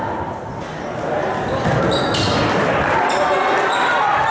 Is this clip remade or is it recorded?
recorded